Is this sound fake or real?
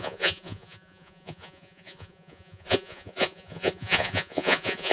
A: fake